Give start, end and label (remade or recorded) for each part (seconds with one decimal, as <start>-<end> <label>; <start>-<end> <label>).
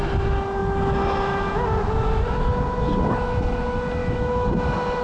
0.0-4.0 recorded; 4.0-4.5 remade; 4.5-5.0 recorded